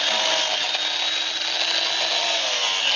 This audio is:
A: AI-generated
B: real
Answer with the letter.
B